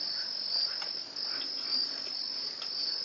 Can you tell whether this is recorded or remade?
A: recorded